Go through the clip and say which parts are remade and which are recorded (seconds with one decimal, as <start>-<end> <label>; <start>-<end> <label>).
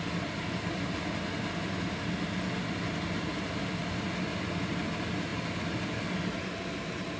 0.0-7.2 recorded